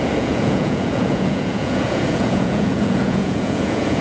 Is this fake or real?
fake